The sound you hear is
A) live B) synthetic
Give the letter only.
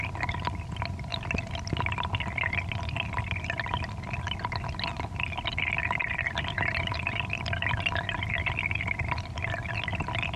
A